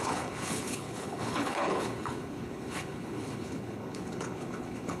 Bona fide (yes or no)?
no